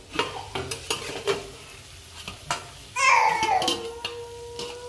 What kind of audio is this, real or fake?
real